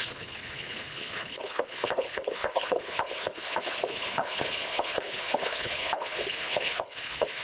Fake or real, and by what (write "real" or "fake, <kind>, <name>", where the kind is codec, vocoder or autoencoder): fake, codec, HILCodec